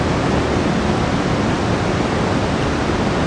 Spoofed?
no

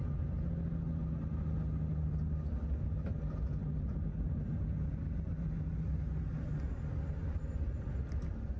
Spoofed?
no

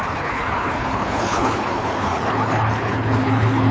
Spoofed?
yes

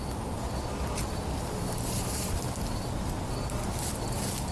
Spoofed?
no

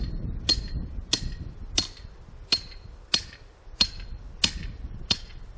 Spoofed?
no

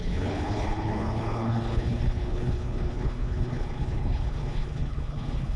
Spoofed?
yes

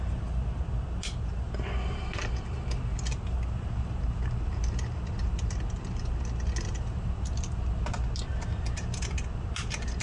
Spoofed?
no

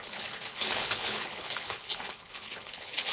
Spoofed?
yes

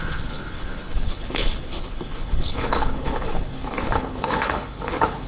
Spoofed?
yes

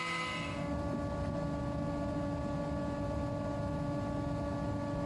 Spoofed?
no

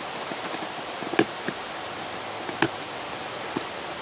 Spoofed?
no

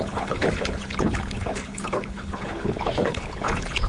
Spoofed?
yes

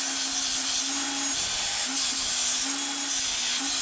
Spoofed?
no